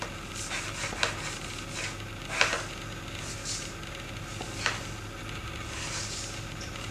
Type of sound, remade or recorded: recorded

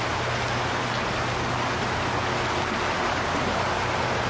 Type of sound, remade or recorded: recorded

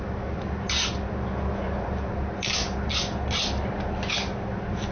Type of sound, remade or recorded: recorded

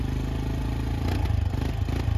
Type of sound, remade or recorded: recorded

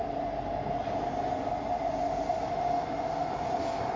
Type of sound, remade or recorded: recorded